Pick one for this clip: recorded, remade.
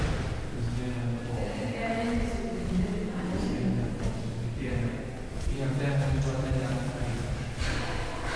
recorded